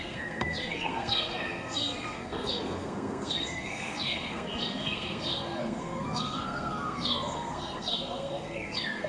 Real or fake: fake